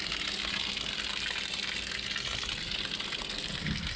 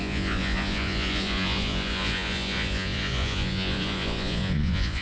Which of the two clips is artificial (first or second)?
second